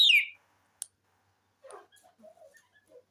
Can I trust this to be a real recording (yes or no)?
yes